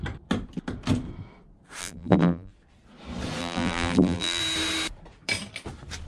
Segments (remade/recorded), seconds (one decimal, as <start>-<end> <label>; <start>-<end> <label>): 0.0-1.8 recorded; 1.8-2.5 remade; 2.5-3.4 recorded; 3.4-4.4 remade; 4.4-6.1 recorded

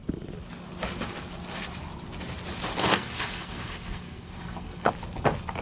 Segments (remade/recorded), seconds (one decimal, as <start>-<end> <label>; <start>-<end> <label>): 0.0-2.9 recorded; 2.9-4.9 remade; 4.9-5.6 recorded

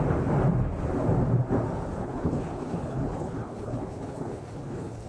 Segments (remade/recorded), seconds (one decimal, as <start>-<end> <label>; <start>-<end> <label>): 0.0-2.0 recorded; 2.0-5.1 remade

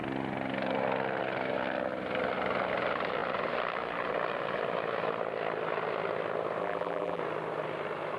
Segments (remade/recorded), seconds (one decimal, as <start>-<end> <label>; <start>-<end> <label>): 0.0-6.6 recorded; 6.6-7.2 remade; 7.2-8.2 recorded

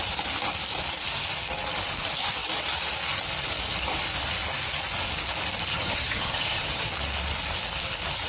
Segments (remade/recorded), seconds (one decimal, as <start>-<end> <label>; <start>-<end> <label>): 0.0-5.7 recorded; 5.7-6.9 remade; 6.9-8.3 recorded

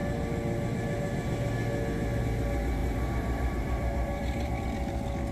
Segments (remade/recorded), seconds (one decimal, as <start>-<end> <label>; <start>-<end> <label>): 0.0-2.8 recorded; 2.8-4.5 remade; 4.5-5.3 recorded

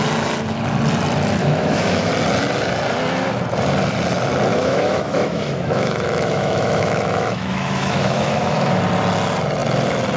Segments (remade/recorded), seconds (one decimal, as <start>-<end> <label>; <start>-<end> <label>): 0.0-1.4 recorded; 1.4-2.1 remade; 2.1-4.5 recorded; 4.5-8.8 remade; 8.8-10.2 recorded